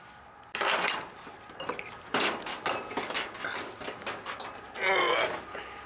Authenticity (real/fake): real